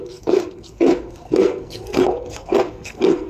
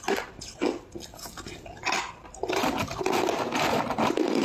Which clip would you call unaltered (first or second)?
second